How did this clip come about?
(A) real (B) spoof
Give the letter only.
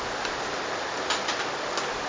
A